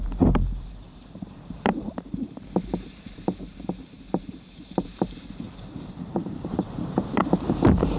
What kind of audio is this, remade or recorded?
remade